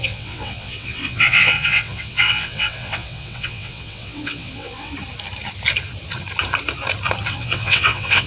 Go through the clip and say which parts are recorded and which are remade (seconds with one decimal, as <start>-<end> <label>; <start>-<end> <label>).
0.0-4.9 remade; 4.9-7.3 recorded; 7.3-8.3 remade